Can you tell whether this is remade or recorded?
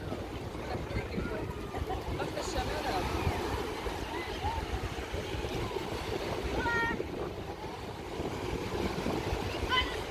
recorded